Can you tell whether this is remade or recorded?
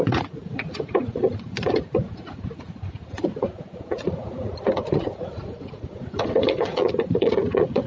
remade